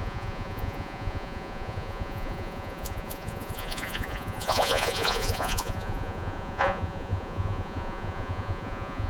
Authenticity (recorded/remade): remade